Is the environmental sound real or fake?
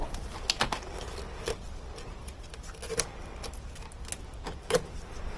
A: real